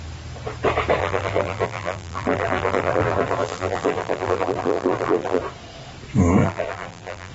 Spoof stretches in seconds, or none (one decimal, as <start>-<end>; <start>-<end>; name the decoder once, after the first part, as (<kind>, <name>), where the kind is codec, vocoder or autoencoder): 1.0-5.4 (vocoder, BigVGAN v2); 6.4-7.3